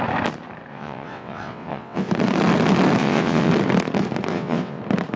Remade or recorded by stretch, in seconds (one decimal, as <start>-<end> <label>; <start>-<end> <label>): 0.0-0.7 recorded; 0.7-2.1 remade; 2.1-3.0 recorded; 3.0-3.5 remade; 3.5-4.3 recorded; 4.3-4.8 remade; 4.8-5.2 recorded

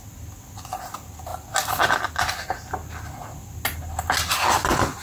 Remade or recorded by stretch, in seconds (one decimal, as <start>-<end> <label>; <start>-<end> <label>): 0.0-5.0 recorded

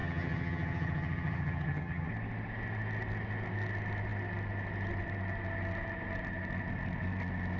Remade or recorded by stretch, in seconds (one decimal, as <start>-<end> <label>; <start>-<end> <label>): 0.0-2.1 remade; 2.1-7.6 recorded